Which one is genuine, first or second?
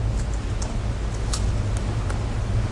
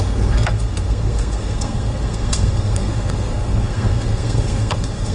first